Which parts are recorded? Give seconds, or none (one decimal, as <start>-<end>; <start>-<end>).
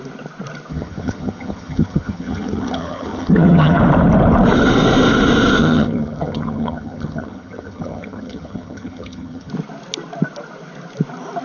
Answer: 0.0-0.7; 3.8-5.6; 9.5-11.4